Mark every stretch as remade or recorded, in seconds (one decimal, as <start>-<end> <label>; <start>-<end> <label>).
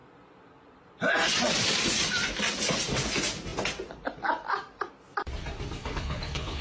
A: 0.0-5.8 recorded; 5.8-6.6 remade